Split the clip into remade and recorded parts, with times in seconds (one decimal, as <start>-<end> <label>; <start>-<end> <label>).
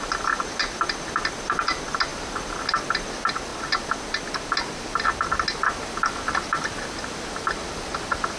0.0-8.4 recorded